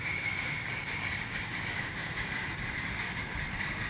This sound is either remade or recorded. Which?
remade